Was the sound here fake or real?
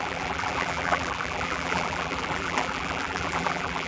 fake